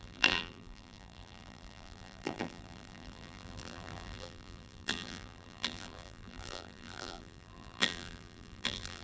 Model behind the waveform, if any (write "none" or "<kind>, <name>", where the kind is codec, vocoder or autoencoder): vocoder, BigVGAN v2